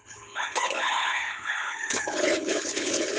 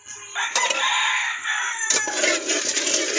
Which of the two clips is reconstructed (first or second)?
first